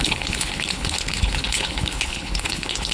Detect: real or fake fake